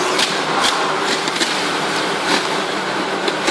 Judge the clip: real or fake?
fake